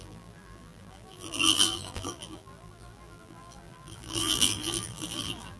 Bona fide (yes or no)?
no